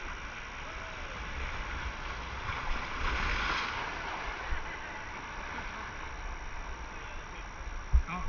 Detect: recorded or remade recorded